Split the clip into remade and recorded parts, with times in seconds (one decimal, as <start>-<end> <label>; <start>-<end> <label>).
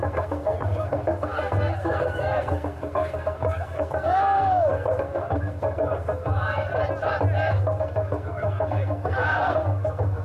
0.0-6.7 remade; 6.7-7.5 recorded; 7.5-10.2 remade